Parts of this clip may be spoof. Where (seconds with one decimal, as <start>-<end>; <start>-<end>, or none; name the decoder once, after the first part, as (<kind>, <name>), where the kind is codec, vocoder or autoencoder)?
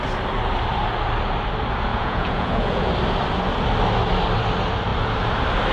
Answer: 1.9-2.9 (vocoder, Vocos)